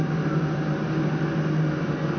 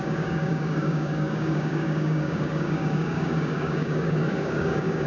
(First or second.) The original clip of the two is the first